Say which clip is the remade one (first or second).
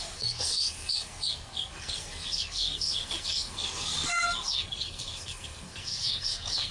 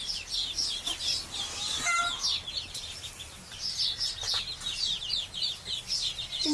first